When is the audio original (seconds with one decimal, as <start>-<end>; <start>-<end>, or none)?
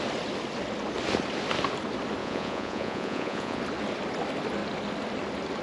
0.0-2.2; 3.6-5.6